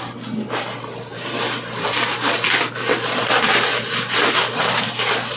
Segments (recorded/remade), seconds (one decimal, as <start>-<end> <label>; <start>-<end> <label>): 0.0-5.4 recorded